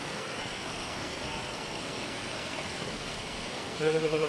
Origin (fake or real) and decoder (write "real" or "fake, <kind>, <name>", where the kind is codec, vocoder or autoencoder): fake, codec, SNAC